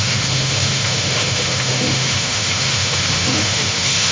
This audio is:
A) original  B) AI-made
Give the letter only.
B